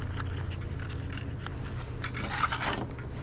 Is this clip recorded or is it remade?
recorded